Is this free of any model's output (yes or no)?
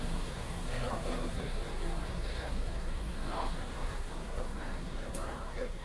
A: no